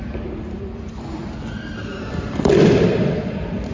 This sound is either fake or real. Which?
fake